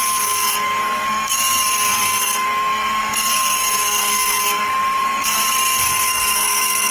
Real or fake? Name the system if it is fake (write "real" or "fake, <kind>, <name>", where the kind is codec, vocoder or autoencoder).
fake, codec, SNAC